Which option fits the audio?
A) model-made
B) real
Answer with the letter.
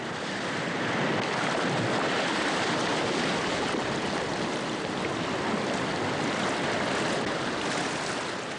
B